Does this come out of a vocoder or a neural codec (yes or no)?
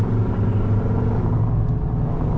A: no